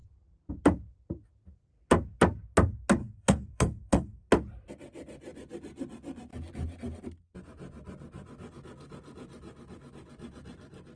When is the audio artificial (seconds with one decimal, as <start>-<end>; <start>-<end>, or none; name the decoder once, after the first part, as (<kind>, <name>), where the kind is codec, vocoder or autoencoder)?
3.0-4.2 (codec, SNAC)